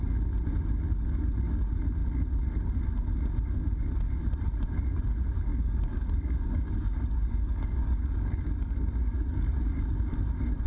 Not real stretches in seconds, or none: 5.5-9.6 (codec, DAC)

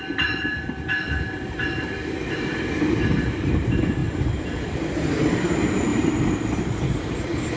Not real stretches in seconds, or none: 5.9-7.6 (vocoder, BigVGAN v2)

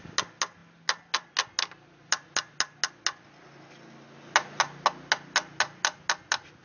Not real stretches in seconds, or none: none

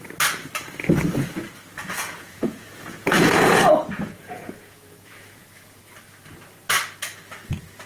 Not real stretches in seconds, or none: 1.8-5.8 (vocoder, Vocos)